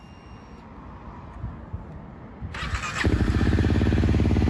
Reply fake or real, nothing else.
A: real